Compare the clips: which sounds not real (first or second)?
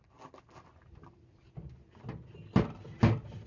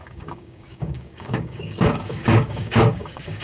second